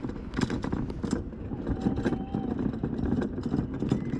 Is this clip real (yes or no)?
yes